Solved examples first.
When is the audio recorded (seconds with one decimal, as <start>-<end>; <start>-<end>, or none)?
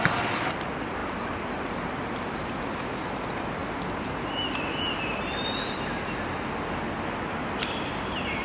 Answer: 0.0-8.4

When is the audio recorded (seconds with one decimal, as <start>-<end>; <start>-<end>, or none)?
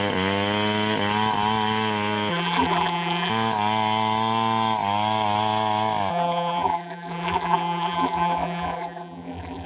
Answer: 0.0-2.3; 3.3-6.1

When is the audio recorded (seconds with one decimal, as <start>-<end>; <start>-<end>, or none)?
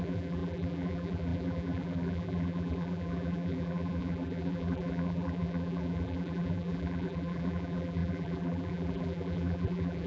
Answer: none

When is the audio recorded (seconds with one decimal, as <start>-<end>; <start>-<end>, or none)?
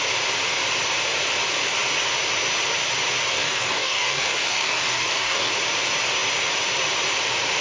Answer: 0.0-3.3; 5.5-7.6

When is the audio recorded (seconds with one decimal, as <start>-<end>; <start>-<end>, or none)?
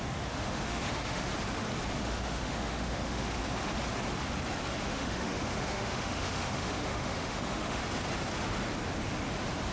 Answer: 1.3-2.0; 3.4-4.8; 7.8-9.7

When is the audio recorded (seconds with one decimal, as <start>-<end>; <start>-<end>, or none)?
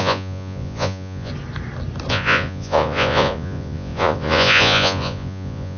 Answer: 1.3-2.1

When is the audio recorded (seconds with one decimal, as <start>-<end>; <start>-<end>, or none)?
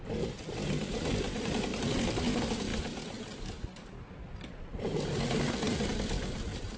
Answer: 0.0-6.8